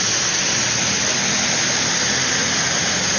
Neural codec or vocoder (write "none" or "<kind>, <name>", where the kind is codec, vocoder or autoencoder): none